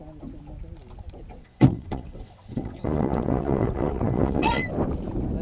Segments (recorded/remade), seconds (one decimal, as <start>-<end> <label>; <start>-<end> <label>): 0.0-1.4 recorded; 1.4-4.6 remade; 4.6-5.4 recorded